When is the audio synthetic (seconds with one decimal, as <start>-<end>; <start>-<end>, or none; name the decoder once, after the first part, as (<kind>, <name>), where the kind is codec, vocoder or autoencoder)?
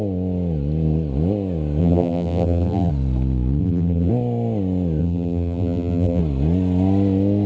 1.8-2.9 (vocoder, BigVGAN v2); 3.6-4.1; 5.0-6.2